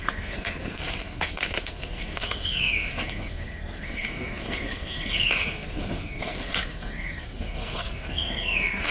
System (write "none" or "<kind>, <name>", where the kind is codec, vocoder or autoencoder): codec, SNAC